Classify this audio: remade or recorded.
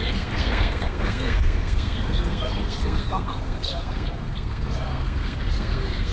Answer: remade